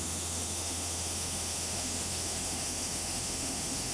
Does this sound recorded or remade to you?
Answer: remade